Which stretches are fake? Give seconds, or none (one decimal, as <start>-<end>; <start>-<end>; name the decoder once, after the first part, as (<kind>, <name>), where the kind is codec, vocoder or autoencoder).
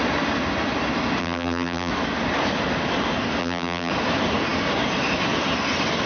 1.2-1.9 (vocoder, BigVGAN v2); 3.4-3.9